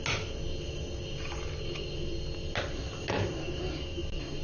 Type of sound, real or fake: real